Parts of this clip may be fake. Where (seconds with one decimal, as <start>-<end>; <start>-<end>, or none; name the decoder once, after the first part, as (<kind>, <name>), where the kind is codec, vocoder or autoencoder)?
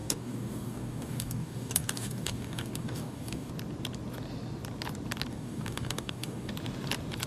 0.0-3.5 (codec, DAC); 5.3-6.5